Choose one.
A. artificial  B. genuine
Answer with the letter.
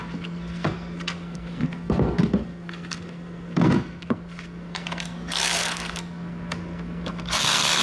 A